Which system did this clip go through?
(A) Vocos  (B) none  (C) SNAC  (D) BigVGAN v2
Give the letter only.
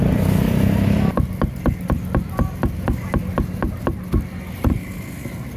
B